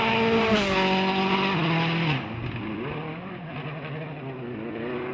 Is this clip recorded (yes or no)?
yes